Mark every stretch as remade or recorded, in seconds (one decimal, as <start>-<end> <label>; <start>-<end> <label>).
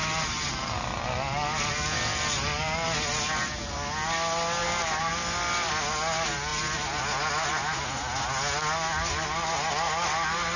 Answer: 0.0-4.6 recorded; 4.6-5.1 remade; 5.1-10.6 recorded